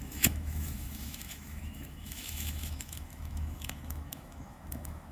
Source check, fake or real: fake